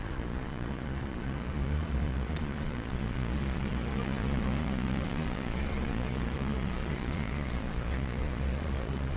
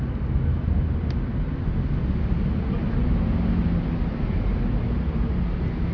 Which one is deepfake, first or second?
first